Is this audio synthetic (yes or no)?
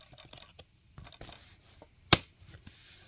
no